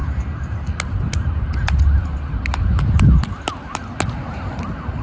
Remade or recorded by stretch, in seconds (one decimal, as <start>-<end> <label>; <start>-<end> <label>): 0.0-5.0 recorded